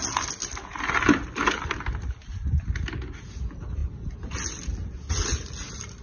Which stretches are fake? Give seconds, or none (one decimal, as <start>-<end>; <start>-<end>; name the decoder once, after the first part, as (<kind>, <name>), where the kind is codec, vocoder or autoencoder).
none